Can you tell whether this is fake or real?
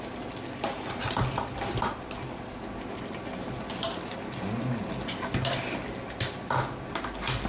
real